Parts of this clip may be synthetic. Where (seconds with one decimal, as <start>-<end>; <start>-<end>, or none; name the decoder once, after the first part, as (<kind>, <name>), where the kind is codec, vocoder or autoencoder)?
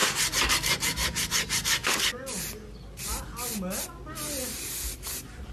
0.5-1.8 (vocoder, BigVGAN v2); 5.1-5.5